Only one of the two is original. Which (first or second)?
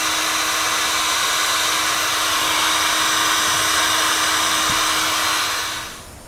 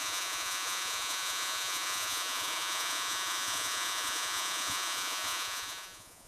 first